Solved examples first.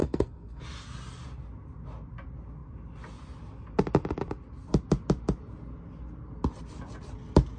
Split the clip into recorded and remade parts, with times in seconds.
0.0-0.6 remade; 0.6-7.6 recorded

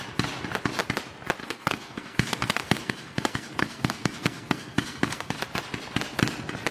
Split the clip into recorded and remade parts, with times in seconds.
0.0-1.4 recorded; 1.4-5.4 remade; 5.4-6.7 recorded

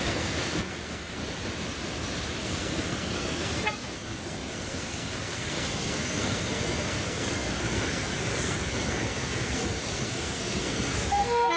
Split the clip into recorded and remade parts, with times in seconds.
0.0-1.2 remade; 1.2-2.4 recorded; 2.4-11.6 remade

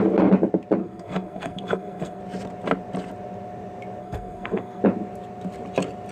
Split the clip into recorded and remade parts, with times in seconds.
0.0-0.8 recorded; 0.8-2.2 remade; 2.2-4.0 recorded; 4.0-4.8 remade; 4.8-6.1 recorded

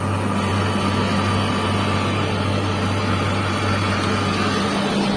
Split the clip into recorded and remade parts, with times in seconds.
0.0-5.2 recorded